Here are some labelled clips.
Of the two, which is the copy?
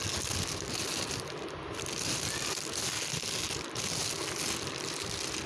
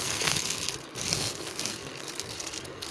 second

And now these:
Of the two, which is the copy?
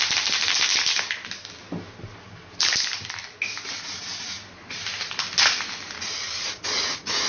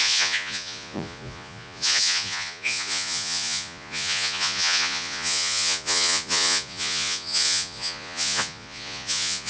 second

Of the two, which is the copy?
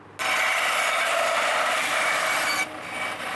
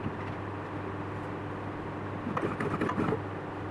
second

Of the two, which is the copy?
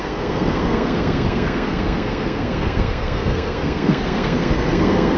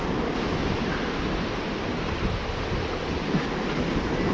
first